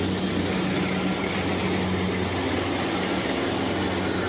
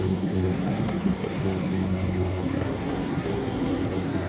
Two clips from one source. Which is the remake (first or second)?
second